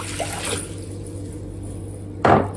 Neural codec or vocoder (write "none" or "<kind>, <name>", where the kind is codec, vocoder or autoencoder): none